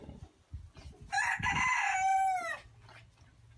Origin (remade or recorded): recorded